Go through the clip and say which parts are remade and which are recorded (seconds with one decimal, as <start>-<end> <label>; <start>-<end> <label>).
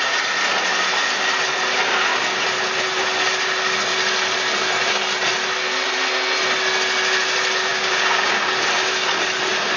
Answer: 0.0-7.7 recorded; 7.7-8.3 remade; 8.3-9.8 recorded